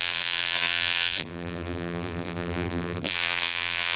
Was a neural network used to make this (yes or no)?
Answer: yes